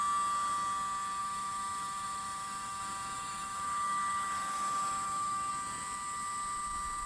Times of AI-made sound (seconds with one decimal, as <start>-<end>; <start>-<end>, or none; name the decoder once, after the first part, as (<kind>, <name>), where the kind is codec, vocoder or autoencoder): 1.2-5.5 (autoencoder, DAC-VAE)